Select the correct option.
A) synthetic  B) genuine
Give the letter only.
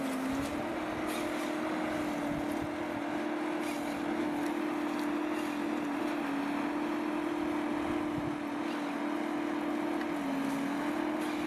B